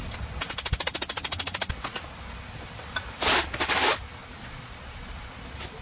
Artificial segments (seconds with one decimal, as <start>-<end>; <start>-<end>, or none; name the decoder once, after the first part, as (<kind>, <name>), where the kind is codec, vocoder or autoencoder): 4.2-5.3 (vocoder, Vocos)